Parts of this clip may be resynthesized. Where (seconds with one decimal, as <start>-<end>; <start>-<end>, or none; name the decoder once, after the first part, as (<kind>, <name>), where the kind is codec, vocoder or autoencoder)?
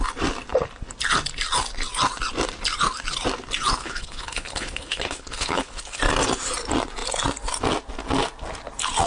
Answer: 3.8-6.0 (codec, HILCodec)